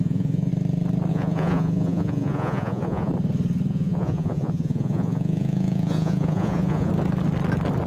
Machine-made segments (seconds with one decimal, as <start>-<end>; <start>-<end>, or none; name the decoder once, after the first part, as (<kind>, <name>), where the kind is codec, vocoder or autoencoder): 0.0-0.5 (vocoder, Vocos); 1.1-3.1; 3.7-6.9

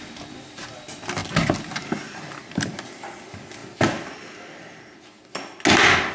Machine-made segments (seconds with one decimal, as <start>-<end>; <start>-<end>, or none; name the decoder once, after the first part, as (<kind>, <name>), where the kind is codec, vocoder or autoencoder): none

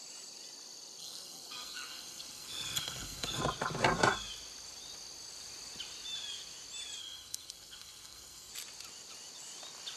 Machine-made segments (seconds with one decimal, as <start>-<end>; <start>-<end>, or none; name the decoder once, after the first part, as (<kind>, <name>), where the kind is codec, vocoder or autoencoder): 1.0-3.4 (codec, SNAC); 7.0-8.5

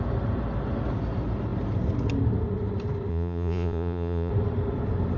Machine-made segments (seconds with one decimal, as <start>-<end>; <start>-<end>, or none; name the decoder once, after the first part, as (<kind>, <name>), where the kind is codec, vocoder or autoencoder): 3.1-4.3 (vocoder, Vocos)

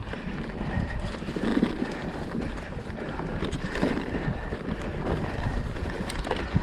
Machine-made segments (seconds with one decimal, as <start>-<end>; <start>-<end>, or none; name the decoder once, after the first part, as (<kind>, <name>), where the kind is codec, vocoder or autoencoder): 0.0-6.6 (vocoder, BigVGAN v2)

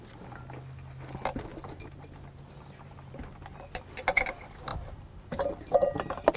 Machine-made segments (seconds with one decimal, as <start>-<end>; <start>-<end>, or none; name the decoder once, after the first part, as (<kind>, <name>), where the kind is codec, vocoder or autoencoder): none

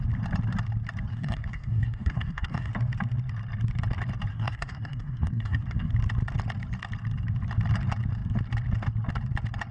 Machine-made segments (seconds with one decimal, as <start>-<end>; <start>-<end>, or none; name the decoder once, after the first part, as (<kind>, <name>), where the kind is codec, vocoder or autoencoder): 1.1-2.7 (codec, SNAC); 4.3-5.9

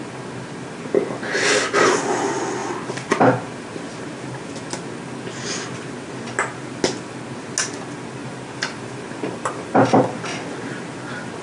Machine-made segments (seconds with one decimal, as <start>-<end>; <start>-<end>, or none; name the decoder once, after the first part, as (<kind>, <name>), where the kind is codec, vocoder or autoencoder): 8.2-10.0 (vocoder, BigVGAN v2)